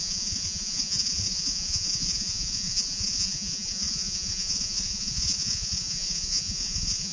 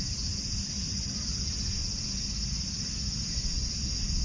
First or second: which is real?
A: second